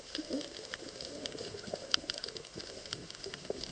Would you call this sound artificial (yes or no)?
yes